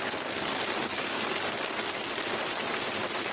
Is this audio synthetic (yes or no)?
no